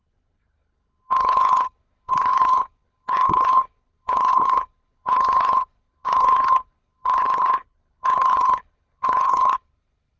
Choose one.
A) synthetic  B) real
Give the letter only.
A